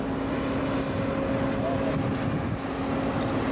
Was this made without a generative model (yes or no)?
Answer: yes